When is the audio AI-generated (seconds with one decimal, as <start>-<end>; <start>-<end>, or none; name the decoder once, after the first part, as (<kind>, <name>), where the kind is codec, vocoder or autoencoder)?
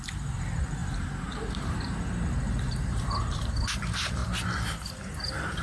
0.0-4.2 (vocoder, BigVGAN v2); 4.9-5.6